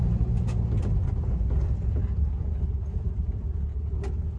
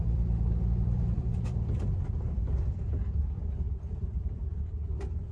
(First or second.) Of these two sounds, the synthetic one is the second